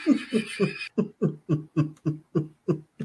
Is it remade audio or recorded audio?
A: recorded